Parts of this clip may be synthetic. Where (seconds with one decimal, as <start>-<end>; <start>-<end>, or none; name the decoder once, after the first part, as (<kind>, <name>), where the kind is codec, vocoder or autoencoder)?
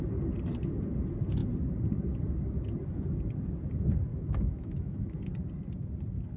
4.1-5.2 (autoencoder, DAC-VAE)